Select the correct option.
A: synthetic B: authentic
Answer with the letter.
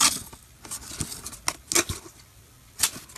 B